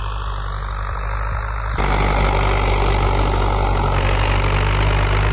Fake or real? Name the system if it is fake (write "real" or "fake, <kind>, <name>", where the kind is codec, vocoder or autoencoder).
real